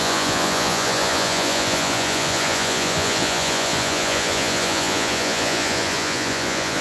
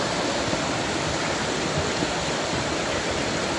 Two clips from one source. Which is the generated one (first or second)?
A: first